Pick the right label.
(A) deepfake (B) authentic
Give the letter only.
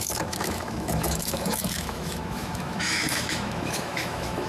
A